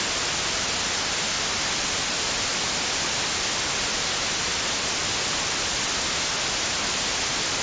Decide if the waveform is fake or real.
real